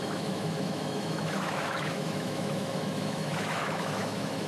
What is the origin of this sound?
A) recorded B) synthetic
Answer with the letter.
B